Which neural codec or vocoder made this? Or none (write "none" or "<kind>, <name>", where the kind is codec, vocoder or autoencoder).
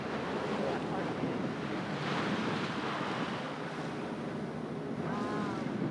none